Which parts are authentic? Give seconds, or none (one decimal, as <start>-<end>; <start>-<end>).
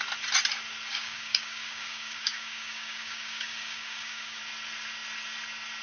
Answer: 0.0-0.9; 4.4-5.8